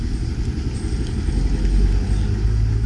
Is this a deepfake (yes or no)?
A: no